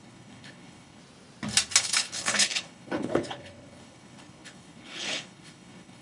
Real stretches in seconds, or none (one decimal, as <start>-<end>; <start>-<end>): 1.0-1.8